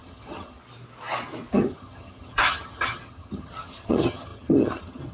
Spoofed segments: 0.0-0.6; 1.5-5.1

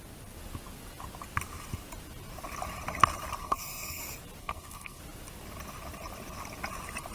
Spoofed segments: 3.4-4.0; 4.4-5.0

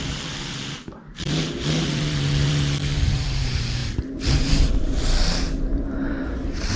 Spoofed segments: 0.0-6.8